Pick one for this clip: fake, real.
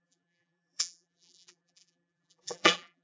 fake